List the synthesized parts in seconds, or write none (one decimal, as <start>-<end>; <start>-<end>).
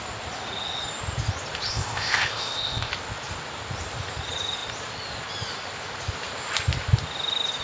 1.7-2.9